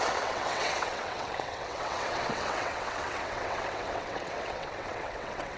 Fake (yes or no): yes